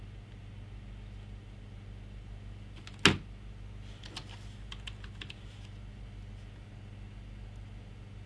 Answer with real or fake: real